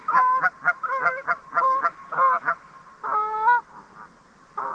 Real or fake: real